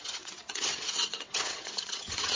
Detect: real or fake fake